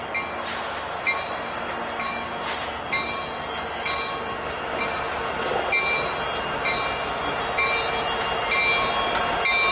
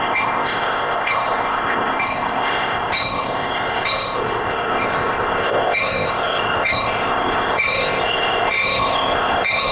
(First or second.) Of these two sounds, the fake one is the second